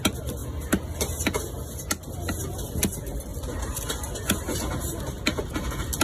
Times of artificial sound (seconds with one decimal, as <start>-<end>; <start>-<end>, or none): 0.0-3.3; 3.9-6.0